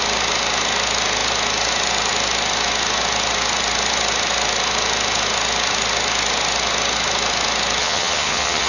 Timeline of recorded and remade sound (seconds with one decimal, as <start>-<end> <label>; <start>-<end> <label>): 0.0-7.8 recorded; 7.8-8.7 remade